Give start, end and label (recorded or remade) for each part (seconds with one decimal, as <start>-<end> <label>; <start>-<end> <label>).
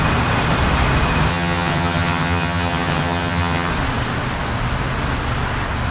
0.0-1.3 recorded; 1.3-3.7 remade; 3.7-5.9 recorded